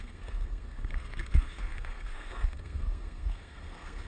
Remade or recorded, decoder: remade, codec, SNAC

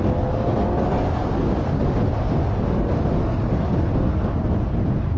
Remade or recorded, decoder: recorded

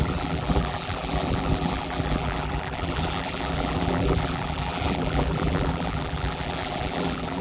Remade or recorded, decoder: remade, vocoder, BigVGAN v2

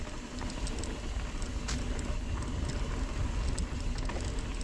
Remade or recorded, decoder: recorded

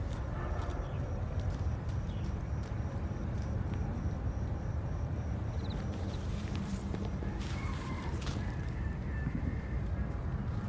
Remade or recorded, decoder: remade, vocoder, BigVGAN v2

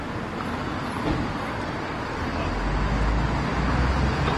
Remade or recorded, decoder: recorded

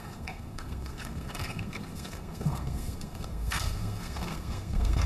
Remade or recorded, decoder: remade, codec, SNAC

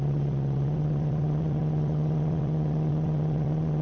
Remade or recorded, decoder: remade, vocoder, WaveNeXt